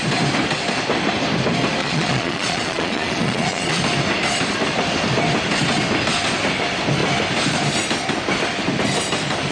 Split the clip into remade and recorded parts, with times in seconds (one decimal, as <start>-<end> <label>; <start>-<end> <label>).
0.0-1.8 recorded; 1.8-3.8 remade; 3.8-9.5 recorded